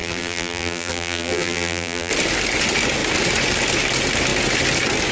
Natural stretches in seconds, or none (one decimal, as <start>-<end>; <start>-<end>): 2.1-5.1